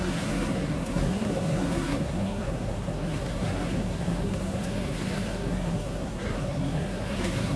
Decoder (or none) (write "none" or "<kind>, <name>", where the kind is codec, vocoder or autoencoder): codec, SNAC